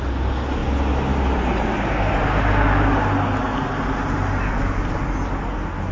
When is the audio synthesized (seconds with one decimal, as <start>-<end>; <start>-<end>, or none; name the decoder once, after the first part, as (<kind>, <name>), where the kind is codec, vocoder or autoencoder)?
none